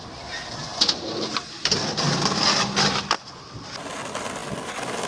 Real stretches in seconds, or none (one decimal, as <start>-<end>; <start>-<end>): 0.0-5.1

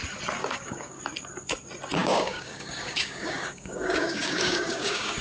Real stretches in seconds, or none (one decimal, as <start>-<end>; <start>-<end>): 0.0-0.4; 1.0-2.0

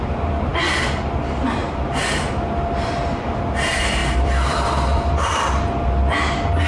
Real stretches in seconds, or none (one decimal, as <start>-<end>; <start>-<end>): 0.0-1.6; 3.4-4.0; 5.3-6.7

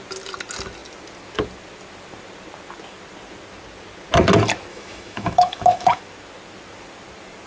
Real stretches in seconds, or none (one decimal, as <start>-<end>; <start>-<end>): 0.0-4.7; 6.0-7.5

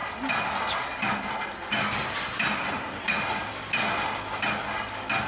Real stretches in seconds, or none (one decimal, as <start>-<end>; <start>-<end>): 0.0-5.3

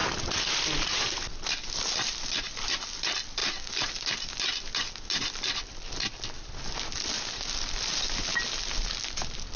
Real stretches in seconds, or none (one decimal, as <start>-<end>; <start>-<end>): 1.3-9.6

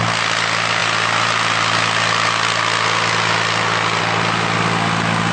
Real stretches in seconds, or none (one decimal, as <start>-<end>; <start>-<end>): 0.0-5.3